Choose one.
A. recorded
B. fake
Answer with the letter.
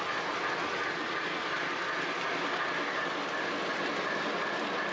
A